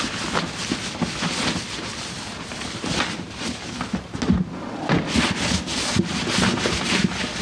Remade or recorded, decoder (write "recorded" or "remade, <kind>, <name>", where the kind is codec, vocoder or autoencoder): recorded